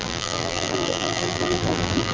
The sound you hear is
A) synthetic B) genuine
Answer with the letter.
A